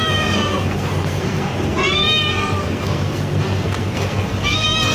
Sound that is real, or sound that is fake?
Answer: fake